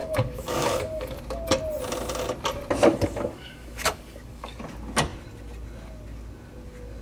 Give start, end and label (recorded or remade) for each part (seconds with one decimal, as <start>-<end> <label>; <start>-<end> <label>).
0.0-1.2 remade; 1.2-2.9 recorded; 2.9-4.6 remade; 4.6-7.0 recorded